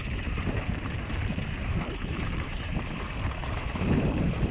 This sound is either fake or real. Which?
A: fake